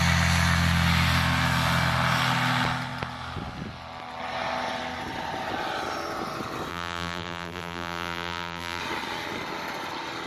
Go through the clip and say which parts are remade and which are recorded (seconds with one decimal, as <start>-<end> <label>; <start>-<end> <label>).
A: 0.0-6.7 recorded; 6.7-8.8 remade; 8.8-10.3 recorded